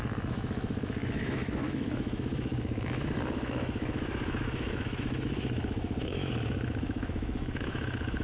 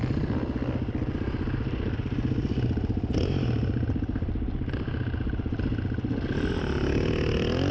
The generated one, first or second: first